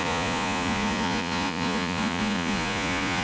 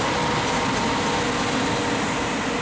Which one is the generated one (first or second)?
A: first